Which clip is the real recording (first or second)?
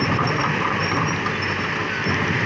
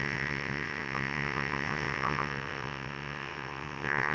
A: first